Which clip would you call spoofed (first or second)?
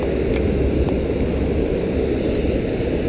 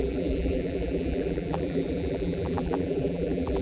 second